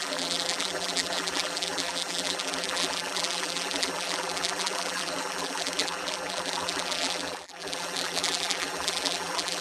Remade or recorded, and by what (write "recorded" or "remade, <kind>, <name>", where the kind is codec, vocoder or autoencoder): remade, vocoder, BigVGAN v2